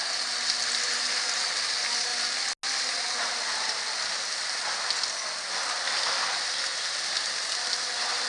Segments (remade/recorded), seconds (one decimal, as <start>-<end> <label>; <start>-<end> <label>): 0.0-8.3 recorded